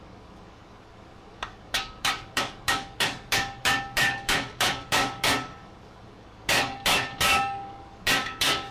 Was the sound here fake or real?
fake